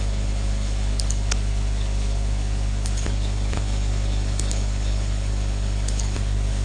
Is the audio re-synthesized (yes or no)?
yes